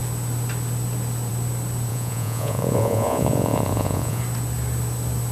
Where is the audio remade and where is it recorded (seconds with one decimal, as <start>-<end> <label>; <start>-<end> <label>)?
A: 0.0-1.9 recorded; 1.9-4.2 remade; 4.2-5.3 recorded